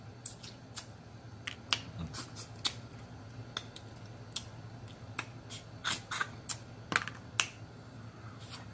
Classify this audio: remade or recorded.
recorded